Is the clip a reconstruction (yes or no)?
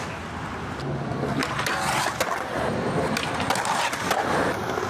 no